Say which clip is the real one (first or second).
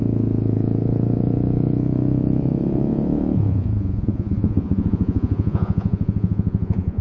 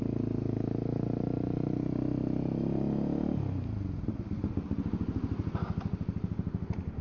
second